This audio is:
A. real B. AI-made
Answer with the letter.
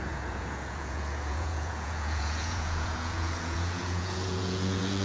B